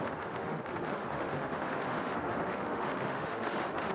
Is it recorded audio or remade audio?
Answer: remade